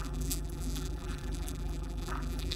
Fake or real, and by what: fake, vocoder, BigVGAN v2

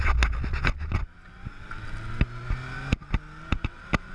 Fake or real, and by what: real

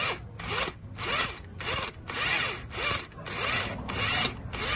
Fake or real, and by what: real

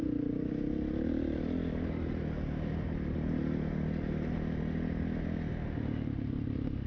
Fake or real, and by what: real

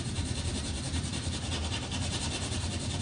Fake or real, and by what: fake, vocoder, BigVGAN v2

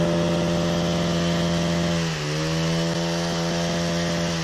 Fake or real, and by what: real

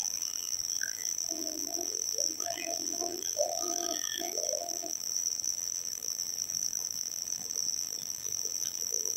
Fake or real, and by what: fake, vocoder, BigVGAN v2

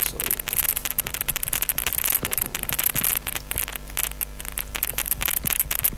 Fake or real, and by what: real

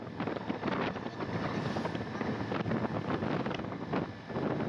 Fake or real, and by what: real